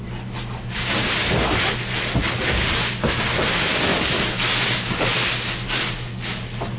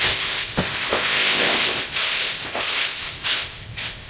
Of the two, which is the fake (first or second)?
second